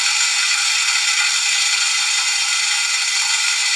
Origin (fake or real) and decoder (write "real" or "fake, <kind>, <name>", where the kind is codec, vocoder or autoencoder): real